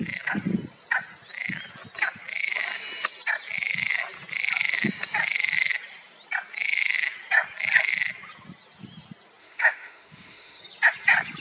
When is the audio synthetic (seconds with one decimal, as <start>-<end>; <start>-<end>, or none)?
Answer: 9.4-10.6